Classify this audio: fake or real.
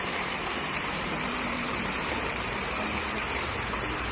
fake